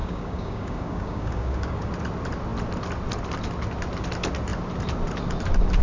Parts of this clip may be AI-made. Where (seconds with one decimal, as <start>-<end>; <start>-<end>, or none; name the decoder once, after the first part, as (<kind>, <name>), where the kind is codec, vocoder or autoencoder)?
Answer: 0.0-1.9 (codec, DAC)